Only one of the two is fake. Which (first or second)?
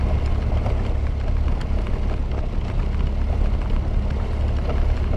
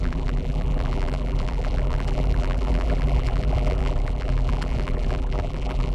second